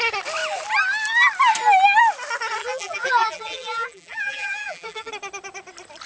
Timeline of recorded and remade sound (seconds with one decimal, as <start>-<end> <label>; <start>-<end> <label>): 0.0-2.6 recorded; 2.6-5.1 remade; 5.1-6.1 recorded